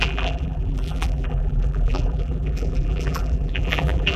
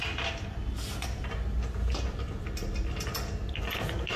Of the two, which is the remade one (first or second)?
first